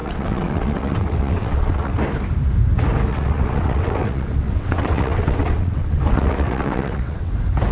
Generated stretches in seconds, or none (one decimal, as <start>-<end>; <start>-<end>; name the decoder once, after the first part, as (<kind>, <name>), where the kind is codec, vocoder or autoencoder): 0.0-1.9 (vocoder, WaveNeXt); 3.1-7.3